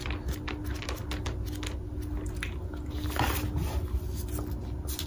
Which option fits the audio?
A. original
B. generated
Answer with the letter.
A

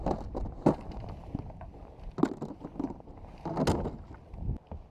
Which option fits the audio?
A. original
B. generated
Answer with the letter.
A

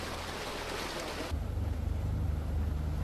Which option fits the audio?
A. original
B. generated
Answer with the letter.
A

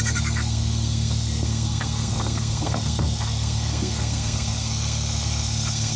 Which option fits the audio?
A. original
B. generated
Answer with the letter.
B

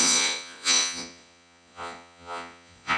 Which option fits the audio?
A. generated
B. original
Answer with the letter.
A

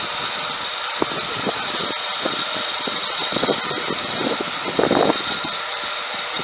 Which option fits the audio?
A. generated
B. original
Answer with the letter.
B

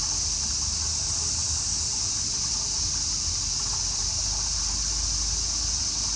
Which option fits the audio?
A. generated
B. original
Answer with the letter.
B